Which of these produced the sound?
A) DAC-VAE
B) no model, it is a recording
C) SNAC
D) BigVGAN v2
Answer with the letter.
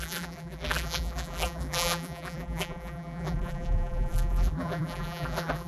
D